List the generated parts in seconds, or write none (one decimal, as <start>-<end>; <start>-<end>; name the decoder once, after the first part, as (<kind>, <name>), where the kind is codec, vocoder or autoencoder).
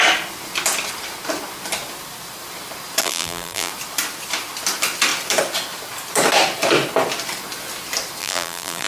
3.0-3.7 (vocoder, BigVGAN v2); 8.2-8.9